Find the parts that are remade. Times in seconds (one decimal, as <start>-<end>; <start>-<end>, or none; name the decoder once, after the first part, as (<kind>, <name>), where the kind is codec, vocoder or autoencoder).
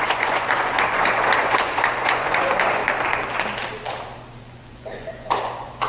0.0-2.8 (vocoder, Vocos); 4.4-5.9